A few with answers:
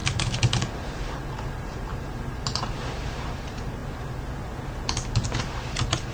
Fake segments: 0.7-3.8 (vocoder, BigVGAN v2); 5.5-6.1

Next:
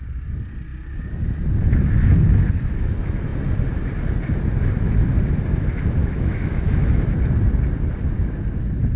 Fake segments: 6.0-7.1 (autoencoder, DAC-VAE)